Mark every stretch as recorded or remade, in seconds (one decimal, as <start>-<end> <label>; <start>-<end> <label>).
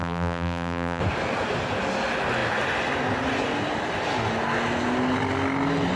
0.0-1.0 remade; 1.0-6.0 recorded